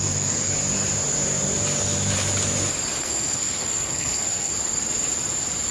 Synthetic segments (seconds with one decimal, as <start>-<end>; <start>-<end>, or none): 0.0-0.5; 3.0-4.5